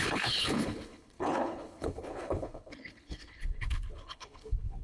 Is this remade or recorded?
remade